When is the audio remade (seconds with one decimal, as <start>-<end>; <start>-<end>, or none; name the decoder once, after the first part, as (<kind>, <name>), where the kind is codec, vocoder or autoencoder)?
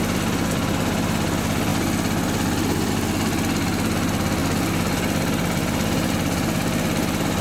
none